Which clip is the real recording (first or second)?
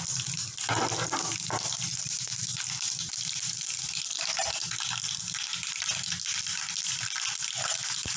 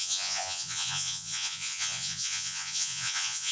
first